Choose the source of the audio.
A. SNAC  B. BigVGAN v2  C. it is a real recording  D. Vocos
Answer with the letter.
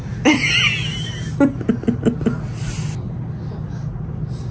C